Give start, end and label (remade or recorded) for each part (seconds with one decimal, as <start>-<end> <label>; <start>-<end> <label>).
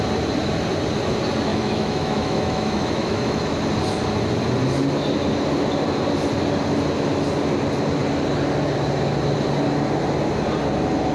0.0-1.5 recorded; 1.5-3.6 remade; 3.6-11.1 recorded